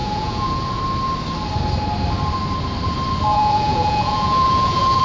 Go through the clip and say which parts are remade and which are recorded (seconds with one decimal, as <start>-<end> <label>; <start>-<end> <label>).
0.0-0.8 remade; 0.8-3.3 recorded; 3.3-5.0 remade

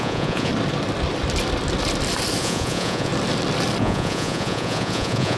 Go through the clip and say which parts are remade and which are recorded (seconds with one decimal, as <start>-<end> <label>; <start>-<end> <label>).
0.0-0.5 remade; 0.5-2.4 recorded; 2.4-3.1 remade; 3.1-3.8 recorded; 3.8-5.4 remade

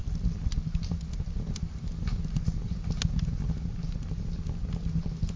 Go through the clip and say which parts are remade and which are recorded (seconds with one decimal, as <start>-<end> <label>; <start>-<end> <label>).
0.0-5.4 recorded

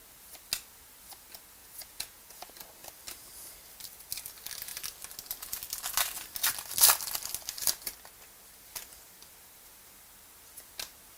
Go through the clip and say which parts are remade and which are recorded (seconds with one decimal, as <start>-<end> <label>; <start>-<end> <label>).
0.0-1.6 recorded; 1.6-2.5 remade; 2.5-11.2 recorded

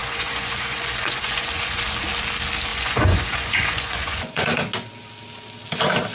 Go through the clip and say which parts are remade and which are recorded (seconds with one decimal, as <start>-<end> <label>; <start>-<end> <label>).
0.0-1.8 remade; 1.8-2.7 recorded; 2.7-4.6 remade; 4.6-6.1 recorded

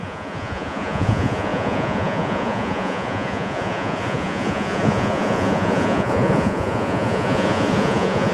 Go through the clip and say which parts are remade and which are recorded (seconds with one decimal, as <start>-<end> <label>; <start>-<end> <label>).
0.0-8.3 remade

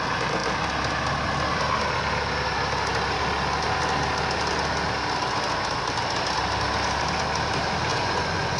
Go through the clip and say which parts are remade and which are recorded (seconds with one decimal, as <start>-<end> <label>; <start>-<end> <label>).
0.0-7.9 recorded; 7.9-8.6 remade

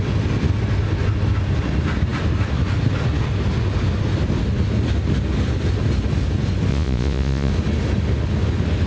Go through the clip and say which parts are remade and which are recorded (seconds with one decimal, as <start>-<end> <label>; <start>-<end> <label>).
0.0-6.7 recorded; 6.7-7.5 remade; 7.5-8.9 recorded